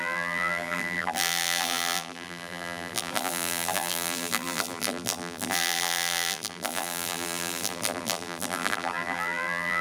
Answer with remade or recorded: remade